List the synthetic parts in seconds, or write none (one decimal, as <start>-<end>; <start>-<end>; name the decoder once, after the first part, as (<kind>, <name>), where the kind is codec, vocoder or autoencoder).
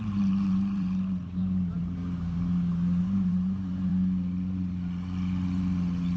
0.0-2.0 (vocoder, BigVGAN v2); 3.0-3.9